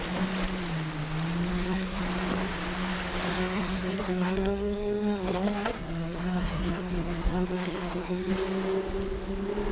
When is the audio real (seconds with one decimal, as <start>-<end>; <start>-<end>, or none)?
0.0-1.5; 2.0-3.3; 8.3-9.7